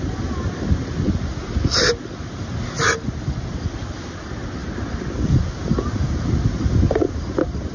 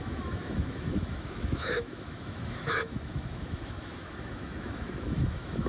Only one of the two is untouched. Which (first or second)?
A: first